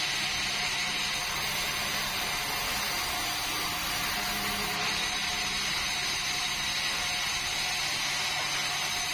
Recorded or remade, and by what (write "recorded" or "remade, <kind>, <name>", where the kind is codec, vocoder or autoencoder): recorded